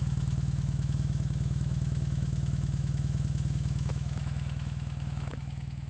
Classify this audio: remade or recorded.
remade